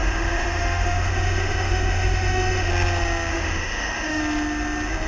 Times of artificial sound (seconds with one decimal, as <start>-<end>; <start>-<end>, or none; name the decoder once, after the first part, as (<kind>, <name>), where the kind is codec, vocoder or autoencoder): 0.0-2.7 (autoencoder, DAC-VAE); 3.3-4.2